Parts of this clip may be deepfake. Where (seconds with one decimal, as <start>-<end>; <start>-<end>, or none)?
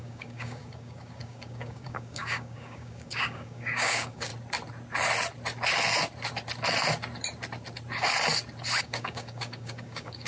0.0-4.3; 8.8-10.3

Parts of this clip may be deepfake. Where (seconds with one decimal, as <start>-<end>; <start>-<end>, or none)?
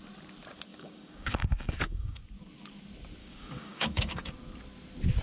0.7-2.2; 3.2-4.3